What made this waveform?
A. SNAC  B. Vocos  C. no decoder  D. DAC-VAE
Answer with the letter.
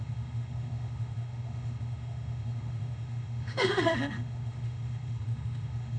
D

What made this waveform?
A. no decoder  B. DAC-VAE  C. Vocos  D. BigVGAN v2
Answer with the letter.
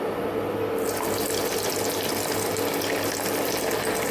A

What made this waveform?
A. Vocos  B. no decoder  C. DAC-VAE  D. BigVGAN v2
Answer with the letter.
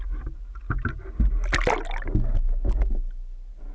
B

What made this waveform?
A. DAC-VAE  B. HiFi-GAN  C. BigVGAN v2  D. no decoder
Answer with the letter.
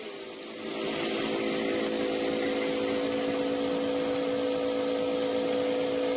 D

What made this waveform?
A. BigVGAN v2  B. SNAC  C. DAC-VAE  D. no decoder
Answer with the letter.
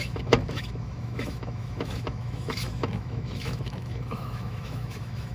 C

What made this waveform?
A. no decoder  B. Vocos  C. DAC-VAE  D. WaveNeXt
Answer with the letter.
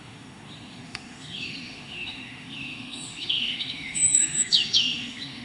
C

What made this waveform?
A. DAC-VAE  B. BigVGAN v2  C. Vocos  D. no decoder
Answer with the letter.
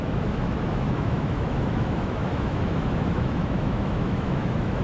A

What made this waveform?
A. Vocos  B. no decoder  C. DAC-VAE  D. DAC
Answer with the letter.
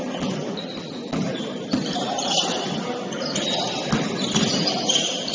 B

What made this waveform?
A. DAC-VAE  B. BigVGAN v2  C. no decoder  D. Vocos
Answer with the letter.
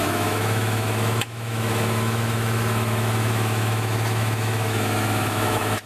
A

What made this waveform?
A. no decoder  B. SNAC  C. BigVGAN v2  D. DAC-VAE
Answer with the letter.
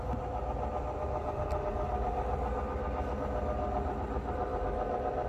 A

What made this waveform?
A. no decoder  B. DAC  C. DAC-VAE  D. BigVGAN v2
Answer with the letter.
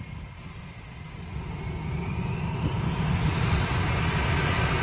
A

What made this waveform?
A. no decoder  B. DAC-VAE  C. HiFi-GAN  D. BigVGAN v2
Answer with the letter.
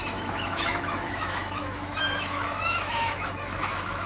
B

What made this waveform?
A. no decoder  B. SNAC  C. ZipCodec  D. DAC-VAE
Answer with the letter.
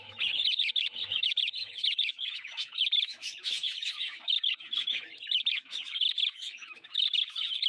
D